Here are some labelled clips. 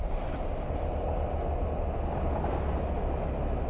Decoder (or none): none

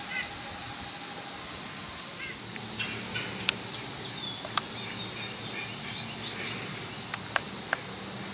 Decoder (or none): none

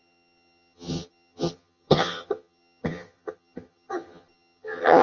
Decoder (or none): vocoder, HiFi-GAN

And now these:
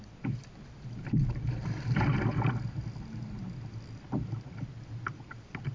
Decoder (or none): none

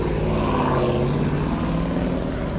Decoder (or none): none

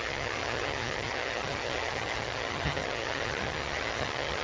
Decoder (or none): vocoder, HiFi-GAN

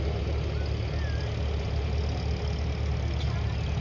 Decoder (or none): none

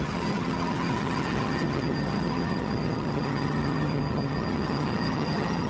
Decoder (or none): vocoder, HiFi-GAN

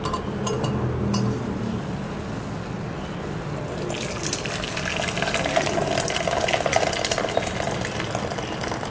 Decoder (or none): none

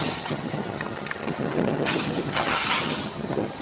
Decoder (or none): vocoder, HiFi-GAN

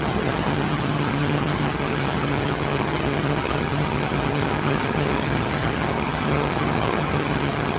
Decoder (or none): vocoder, HiFi-GAN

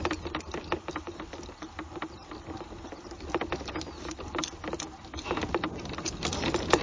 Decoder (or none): none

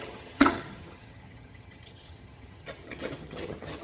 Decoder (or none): vocoder, HiFi-GAN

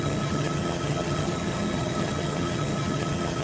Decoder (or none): vocoder, HiFi-GAN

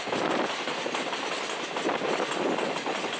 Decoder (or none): none